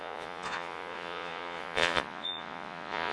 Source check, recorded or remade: remade